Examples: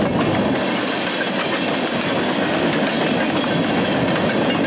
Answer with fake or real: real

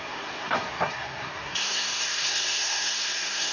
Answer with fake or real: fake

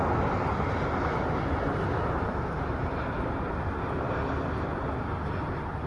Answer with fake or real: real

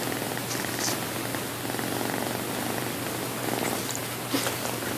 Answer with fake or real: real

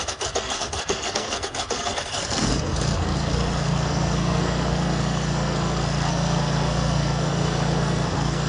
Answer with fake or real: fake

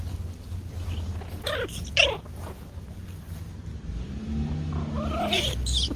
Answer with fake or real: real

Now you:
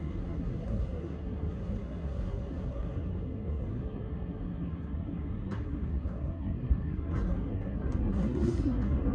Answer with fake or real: fake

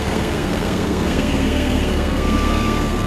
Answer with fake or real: fake